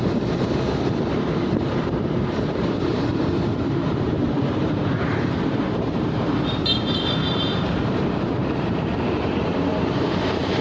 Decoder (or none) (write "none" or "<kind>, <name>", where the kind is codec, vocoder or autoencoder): vocoder, BigVGAN v2